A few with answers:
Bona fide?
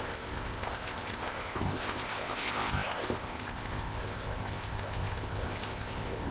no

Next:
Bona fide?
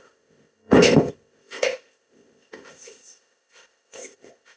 no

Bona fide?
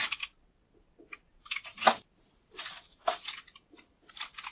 yes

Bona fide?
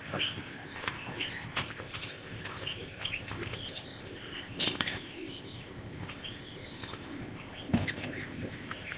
no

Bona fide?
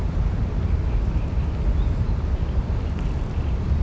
yes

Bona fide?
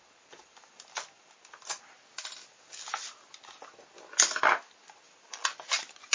yes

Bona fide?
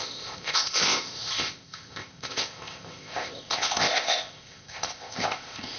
no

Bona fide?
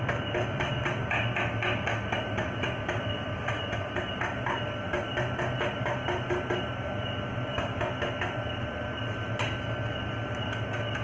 yes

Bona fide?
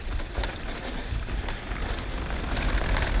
yes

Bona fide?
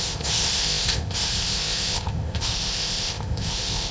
no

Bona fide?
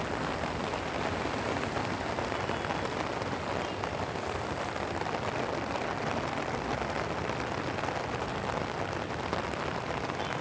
yes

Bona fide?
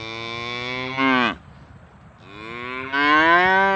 yes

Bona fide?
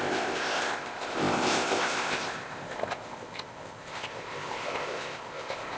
no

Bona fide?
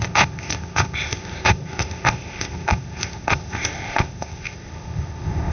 no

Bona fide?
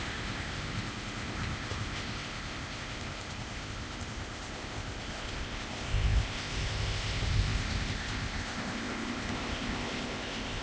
no